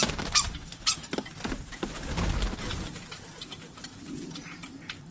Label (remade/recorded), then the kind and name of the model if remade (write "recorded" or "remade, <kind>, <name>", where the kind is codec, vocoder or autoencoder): recorded